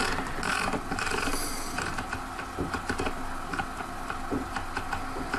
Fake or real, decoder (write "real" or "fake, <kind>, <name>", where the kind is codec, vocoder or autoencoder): real